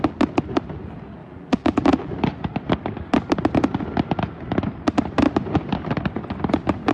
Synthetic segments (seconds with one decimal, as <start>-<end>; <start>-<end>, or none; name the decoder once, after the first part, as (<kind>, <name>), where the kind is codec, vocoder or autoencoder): 1.2-2.1 (vocoder, BigVGAN v2)